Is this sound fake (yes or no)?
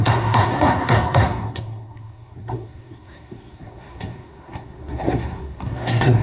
yes